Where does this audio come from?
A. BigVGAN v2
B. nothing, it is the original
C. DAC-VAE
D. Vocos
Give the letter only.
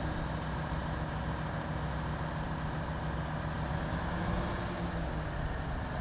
B